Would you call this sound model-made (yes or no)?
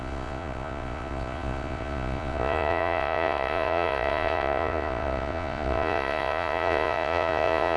yes